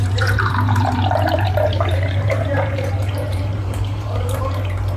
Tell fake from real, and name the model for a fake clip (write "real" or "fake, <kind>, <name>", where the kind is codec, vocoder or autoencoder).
fake, vocoder, BigVGAN v2